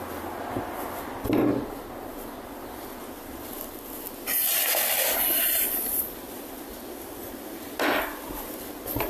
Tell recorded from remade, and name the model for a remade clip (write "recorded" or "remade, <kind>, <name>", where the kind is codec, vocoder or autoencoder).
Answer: recorded